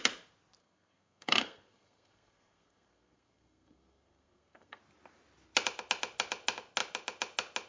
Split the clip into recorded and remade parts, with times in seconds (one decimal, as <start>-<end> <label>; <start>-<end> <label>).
0.0-0.6 recorded; 0.6-4.8 remade; 4.8-7.7 recorded